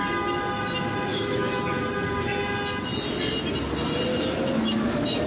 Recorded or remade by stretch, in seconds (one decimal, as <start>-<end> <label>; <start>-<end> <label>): 0.0-1.1 recorded; 1.1-1.8 remade; 1.8-4.1 recorded; 4.1-5.3 remade